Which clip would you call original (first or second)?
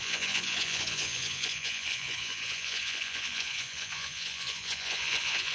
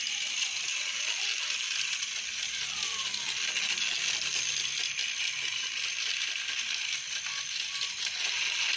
second